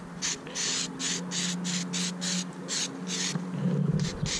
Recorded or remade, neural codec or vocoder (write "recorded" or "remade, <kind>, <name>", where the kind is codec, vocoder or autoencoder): recorded